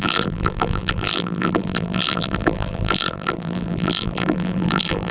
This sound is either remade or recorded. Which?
remade